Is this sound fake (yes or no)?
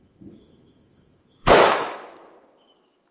yes